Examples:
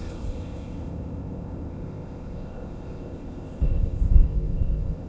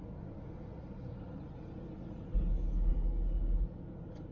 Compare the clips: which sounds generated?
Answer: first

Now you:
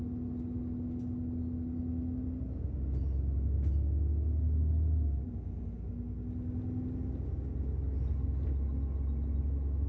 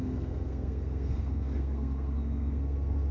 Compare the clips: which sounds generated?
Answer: second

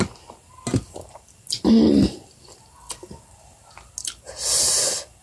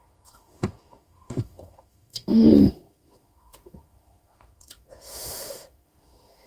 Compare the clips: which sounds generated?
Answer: second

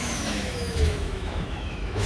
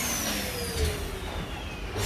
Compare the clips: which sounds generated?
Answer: first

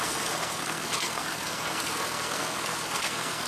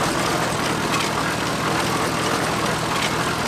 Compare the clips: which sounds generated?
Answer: first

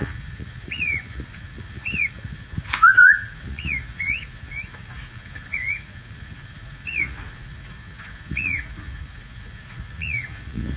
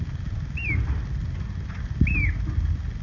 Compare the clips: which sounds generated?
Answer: first